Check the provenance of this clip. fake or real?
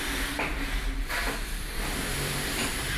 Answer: fake